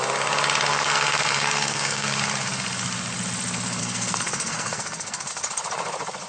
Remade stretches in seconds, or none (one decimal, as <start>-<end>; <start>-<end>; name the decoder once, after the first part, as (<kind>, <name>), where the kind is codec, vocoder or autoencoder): 0.7-2.2 (codec, SNAC); 3.8-5.3